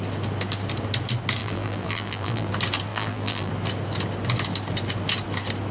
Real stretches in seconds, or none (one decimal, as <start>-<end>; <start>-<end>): 0.0-1.4; 2.5-2.9; 3.5-5.7